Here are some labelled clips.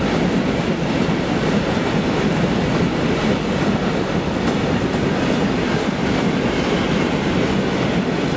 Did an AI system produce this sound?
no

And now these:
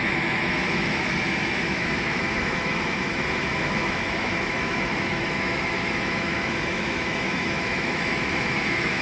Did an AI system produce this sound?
yes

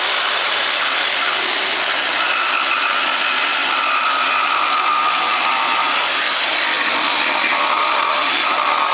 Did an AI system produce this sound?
no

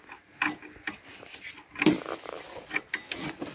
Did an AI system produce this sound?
no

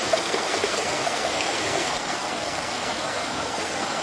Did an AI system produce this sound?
yes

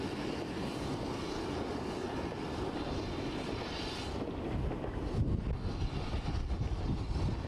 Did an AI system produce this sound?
no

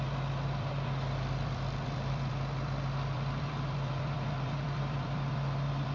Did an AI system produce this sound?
yes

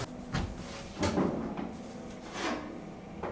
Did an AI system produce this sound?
no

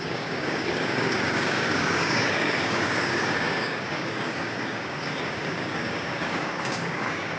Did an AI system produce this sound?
yes